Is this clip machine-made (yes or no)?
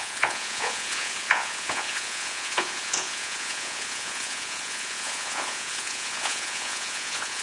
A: yes